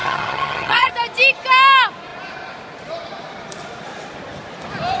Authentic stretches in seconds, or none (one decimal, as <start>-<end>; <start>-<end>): 0.9-5.0